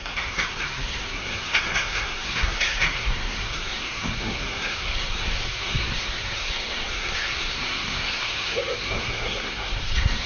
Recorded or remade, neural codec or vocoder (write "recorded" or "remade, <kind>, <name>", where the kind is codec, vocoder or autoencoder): remade, codec, SNAC